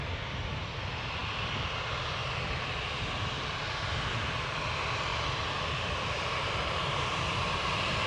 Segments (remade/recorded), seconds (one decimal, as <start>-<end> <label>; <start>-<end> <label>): 0.0-5.1 recorded; 5.1-8.1 remade